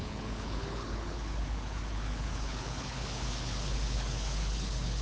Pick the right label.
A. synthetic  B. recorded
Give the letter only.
A